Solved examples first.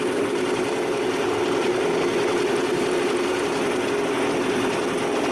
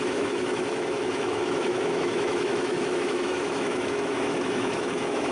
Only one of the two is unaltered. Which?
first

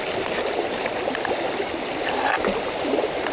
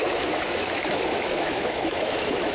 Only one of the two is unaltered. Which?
first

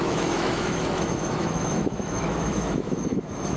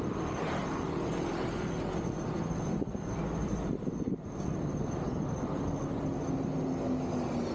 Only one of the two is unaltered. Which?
second